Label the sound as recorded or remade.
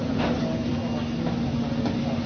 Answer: recorded